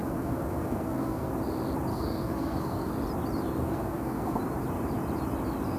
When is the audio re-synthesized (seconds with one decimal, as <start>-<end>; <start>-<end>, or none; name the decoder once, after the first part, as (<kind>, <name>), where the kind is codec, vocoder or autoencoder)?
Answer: 0.0-1.3 (codec, SNAC); 1.9-2.9; 3.6-4.4